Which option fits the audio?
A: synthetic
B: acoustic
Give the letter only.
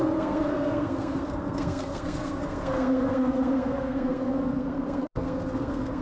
A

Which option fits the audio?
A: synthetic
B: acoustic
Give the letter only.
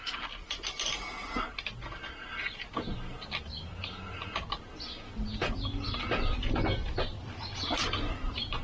B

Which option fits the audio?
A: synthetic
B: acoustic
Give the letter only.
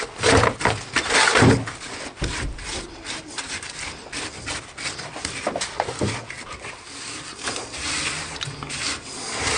B